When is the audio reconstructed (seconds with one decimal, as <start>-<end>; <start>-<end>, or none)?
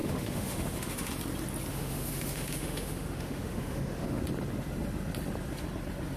0.0-1.1; 1.7-4.2